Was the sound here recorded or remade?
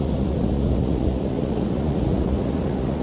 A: remade